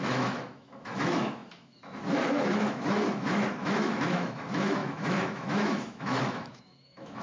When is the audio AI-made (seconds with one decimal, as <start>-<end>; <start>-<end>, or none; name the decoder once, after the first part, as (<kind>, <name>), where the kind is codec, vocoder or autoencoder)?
0.0-7.2 (autoencoder, DAC-VAE)